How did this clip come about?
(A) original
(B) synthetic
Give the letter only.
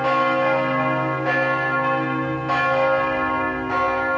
A